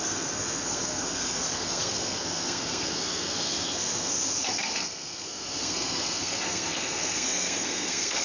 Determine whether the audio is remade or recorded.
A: remade